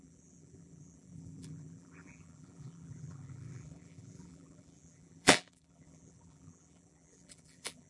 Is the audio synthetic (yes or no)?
yes